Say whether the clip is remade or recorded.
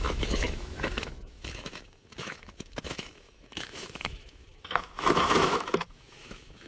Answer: remade